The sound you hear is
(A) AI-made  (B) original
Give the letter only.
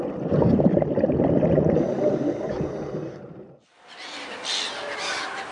A